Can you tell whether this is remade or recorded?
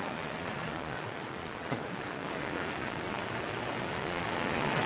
remade